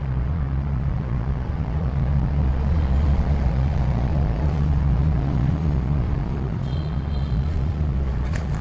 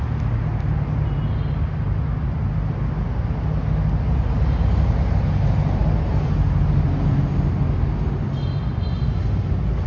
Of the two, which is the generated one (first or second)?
first